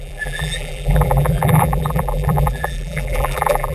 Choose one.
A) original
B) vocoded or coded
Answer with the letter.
B